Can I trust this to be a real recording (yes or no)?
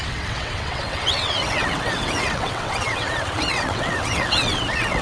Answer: no